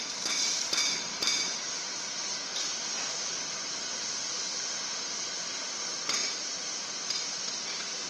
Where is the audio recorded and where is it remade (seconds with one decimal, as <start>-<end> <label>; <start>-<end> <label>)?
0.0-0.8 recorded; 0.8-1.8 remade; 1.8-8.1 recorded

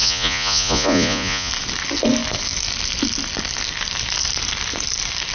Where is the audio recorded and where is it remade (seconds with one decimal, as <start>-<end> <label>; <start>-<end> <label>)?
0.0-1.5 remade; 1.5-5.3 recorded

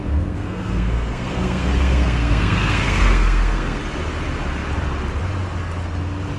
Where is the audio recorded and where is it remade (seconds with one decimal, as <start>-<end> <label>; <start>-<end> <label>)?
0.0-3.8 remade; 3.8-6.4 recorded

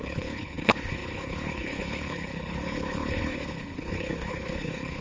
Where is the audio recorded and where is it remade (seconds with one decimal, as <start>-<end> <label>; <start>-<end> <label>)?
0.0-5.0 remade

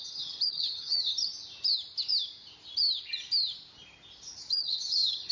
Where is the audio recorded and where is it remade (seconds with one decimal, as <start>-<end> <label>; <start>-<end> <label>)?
0.0-1.3 remade; 1.3-4.5 recorded; 4.5-5.3 remade